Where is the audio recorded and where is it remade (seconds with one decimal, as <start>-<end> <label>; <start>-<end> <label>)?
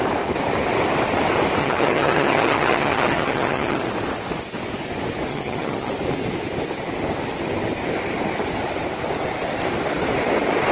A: 0.0-1.6 recorded; 1.6-3.8 remade; 3.8-5.3 recorded; 5.3-5.9 remade; 5.9-10.7 recorded